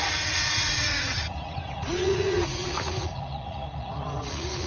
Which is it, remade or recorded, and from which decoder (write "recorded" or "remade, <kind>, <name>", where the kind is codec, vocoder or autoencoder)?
remade, vocoder, Vocos